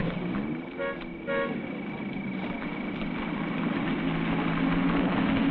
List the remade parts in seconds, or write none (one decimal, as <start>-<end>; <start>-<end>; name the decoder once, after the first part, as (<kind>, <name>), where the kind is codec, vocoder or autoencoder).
none